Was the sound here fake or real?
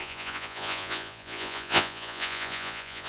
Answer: fake